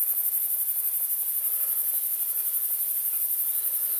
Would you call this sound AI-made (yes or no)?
no